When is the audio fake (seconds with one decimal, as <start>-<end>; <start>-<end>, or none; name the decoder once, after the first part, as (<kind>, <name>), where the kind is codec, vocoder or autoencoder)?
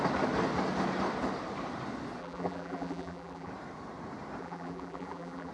2.2-3.5 (vocoder, BigVGAN v2); 4.4-5.5